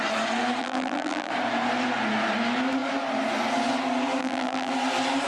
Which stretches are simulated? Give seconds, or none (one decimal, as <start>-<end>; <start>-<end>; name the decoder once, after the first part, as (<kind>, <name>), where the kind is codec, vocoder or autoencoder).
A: 0.6-1.3 (vocoder, BigVGAN v2); 4.2-4.7